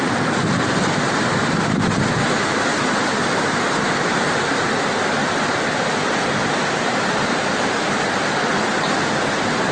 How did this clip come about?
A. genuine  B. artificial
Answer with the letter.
A